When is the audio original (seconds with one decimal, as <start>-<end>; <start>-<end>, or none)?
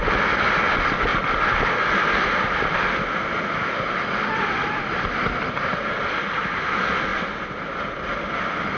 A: 0.0-8.8